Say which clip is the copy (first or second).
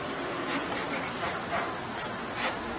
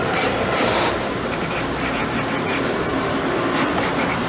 second